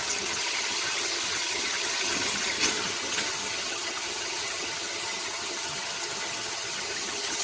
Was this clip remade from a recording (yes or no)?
yes